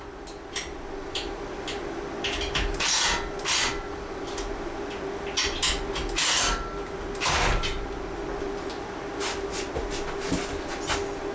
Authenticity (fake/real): real